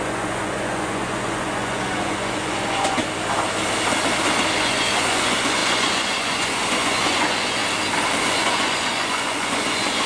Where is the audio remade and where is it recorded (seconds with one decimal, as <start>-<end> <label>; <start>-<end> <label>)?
0.0-3.0 remade; 3.0-4.6 recorded; 4.6-7.6 remade; 7.6-8.2 recorded; 8.2-10.1 remade